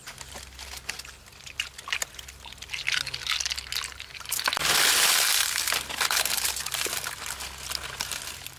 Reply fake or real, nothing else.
real